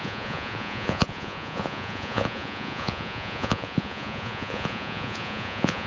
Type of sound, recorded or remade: remade